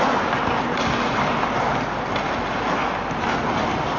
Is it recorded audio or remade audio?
recorded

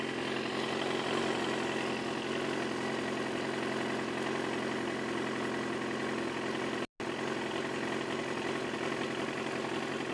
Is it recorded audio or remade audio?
recorded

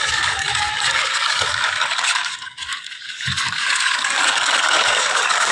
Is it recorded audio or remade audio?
remade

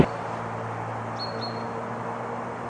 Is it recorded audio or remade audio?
recorded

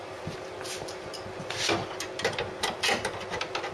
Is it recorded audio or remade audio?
recorded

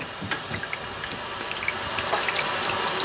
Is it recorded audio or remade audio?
recorded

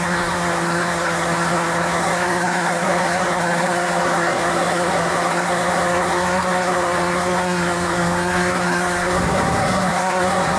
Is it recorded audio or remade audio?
remade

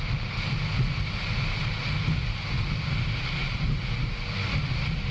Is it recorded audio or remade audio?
recorded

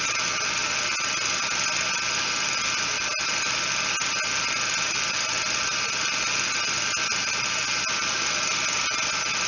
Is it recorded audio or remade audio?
recorded